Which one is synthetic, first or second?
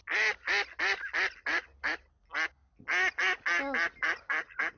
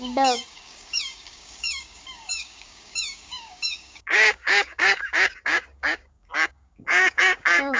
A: second